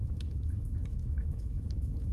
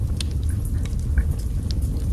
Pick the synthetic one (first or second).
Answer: first